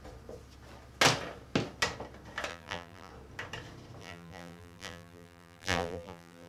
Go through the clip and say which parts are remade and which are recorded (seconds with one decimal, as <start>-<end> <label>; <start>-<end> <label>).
0.0-2.5 recorded; 2.5-3.1 remade; 3.1-4.0 recorded; 4.0-6.5 remade